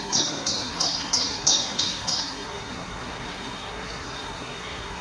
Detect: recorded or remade remade